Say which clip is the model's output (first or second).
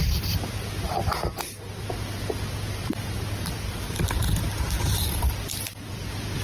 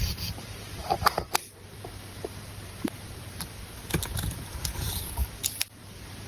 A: second